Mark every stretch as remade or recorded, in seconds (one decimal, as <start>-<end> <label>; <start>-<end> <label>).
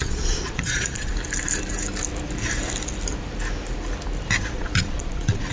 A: 0.0-1.1 remade; 1.1-4.4 recorded; 4.4-5.5 remade